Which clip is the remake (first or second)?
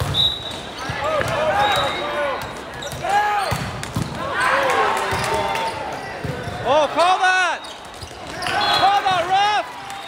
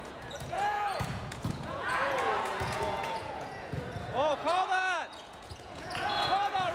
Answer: second